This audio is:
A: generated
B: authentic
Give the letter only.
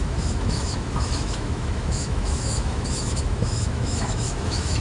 A